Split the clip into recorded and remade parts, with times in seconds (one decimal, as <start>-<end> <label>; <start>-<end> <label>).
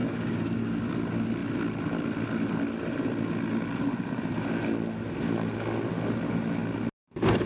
0.0-0.8 remade; 0.8-7.5 recorded